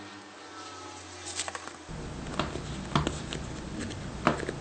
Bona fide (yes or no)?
yes